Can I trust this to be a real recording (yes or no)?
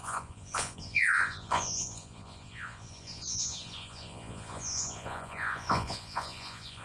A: no